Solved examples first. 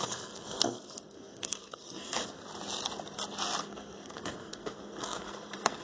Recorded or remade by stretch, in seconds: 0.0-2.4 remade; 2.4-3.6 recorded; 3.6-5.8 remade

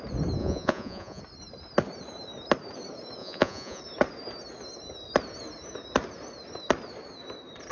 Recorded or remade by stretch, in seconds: 0.0-0.4 recorded; 0.4-1.2 remade; 1.2-3.2 recorded; 3.2-3.8 remade; 3.8-7.7 recorded

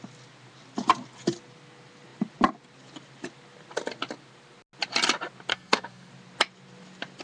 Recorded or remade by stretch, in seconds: 0.0-5.5 recorded; 5.5-6.1 remade; 6.1-7.2 recorded

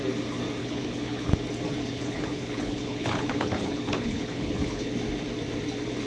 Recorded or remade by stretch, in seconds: 0.0-0.6 recorded; 0.6-1.3 remade; 1.3-1.9 recorded; 1.9-4.9 remade; 4.9-6.1 recorded

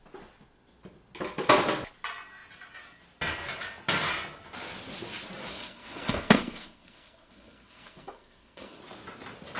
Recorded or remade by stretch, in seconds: 0.0-5.5 recorded; 5.5-8.8 remade; 8.8-9.6 recorded